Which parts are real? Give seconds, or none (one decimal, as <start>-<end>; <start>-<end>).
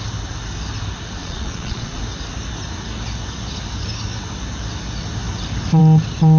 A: 0.0-1.2; 2.0-6.4